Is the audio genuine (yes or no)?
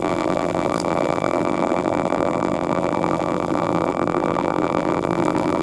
no